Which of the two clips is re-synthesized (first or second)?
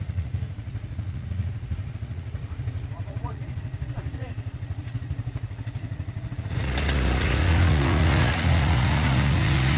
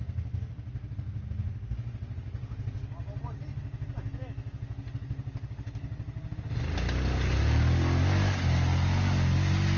first